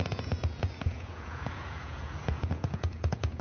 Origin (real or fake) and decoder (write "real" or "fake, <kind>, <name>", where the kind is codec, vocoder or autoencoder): fake, vocoder, Vocos